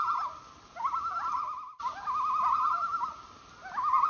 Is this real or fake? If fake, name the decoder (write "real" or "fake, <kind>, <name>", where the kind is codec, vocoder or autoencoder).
real